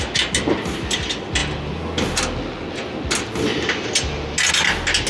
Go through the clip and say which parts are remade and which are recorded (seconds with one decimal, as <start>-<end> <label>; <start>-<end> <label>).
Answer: 0.0-5.1 recorded